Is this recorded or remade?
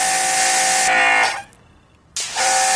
recorded